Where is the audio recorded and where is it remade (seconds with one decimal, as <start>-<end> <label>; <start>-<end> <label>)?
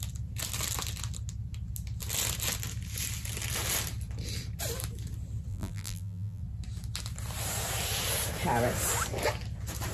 0.0-5.5 recorded; 5.5-6.4 remade; 6.4-9.9 recorded